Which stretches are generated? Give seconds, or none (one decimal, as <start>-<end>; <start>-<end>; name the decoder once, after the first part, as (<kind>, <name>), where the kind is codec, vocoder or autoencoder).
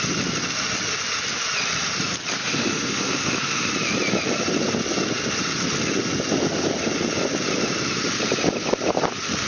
2.4-3.7 (autoencoder, DAC-VAE)